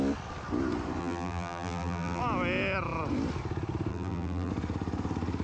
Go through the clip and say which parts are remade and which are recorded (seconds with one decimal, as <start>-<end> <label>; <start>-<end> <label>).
0.0-1.0 recorded; 1.0-2.2 remade; 2.2-3.9 recorded; 3.9-4.5 remade; 4.5-5.4 recorded